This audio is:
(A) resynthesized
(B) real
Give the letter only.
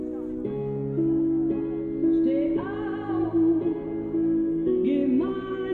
B